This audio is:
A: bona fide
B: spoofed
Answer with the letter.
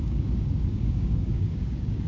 B